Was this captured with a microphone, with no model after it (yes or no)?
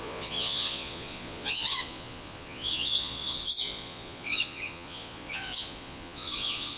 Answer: no